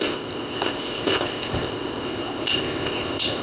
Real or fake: fake